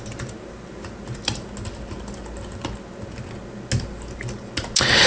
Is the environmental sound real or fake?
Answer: real